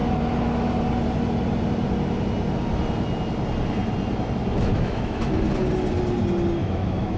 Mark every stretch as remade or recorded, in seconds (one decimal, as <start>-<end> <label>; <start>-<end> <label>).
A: 0.0-4.7 recorded; 4.7-5.4 remade; 5.4-6.6 recorded; 6.6-7.2 remade

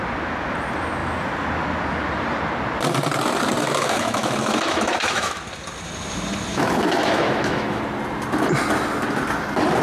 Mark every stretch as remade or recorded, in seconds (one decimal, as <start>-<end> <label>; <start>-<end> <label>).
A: 0.0-3.6 recorded; 3.6-5.4 remade; 5.4-6.5 recorded; 6.5-7.8 remade; 7.8-9.8 recorded